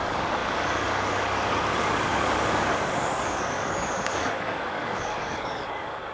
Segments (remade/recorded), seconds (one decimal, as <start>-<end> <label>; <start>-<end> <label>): 0.0-6.1 remade